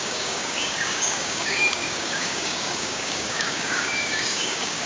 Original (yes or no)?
no